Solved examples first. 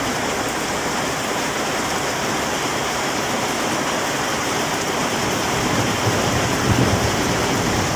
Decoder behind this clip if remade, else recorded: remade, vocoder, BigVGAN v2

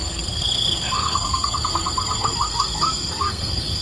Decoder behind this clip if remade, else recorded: remade, codec, SNAC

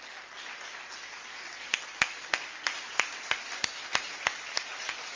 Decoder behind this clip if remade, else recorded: recorded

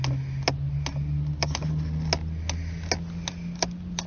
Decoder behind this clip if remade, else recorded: recorded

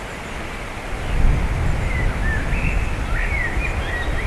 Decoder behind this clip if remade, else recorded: recorded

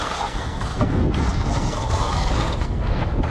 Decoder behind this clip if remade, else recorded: remade, codec, SNAC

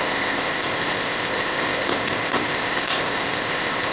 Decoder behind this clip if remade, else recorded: remade, codec, ZipCodec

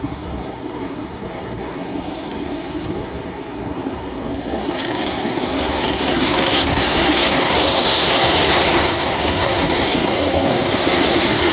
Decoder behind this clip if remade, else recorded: remade, codec, SNAC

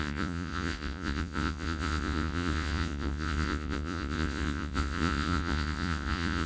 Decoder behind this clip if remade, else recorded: remade, vocoder, Vocos